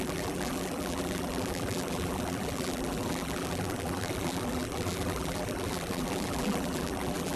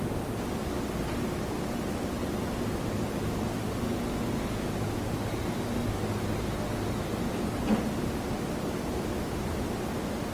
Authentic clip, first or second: second